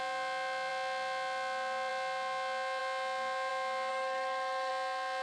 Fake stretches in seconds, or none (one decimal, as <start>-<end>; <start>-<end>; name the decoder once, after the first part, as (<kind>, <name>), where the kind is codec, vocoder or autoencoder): 3.9-4.7 (autoencoder, DAC-VAE)